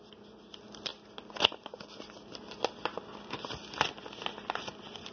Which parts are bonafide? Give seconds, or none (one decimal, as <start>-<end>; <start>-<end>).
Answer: 0.0-5.1